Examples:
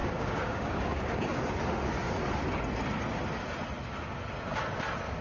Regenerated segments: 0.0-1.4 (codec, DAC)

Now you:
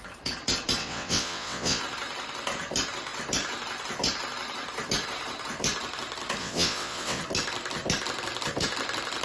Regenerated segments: 0.8-1.8 (vocoder, WaveNeXt); 6.4-7.2

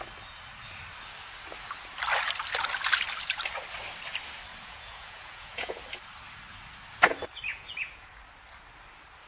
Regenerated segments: 4.5-5.8 (vocoder, Vocos); 7.5-8.2

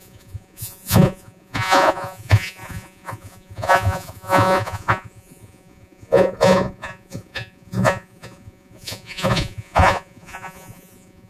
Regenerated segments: 0.0-11.3 (vocoder, Vocos)

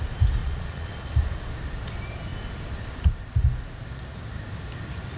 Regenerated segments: 0.4-0.9 (vocoder, Vocos)

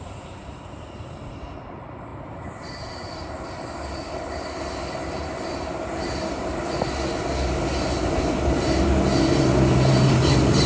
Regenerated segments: 0.4-1.6 (vocoder, BigVGAN v2); 2.1-3.4

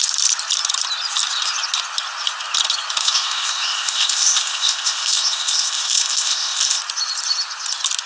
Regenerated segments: 3.0-6.8 (codec, ZipCodec)

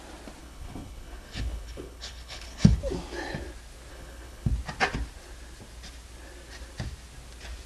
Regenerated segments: 0.4-2.8 (codec, HILCodec); 3.9-4.5